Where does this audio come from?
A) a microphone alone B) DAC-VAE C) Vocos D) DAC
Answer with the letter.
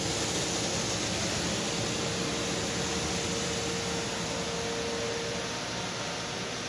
A